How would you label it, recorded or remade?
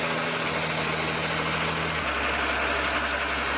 recorded